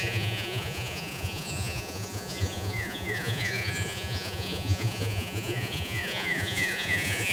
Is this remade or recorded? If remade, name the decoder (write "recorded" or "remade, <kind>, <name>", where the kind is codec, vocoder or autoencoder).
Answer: remade, vocoder, Vocos